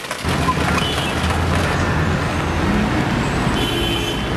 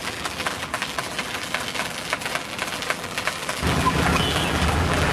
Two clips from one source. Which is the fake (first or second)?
second